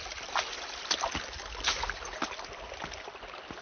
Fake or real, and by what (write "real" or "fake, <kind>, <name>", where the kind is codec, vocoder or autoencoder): real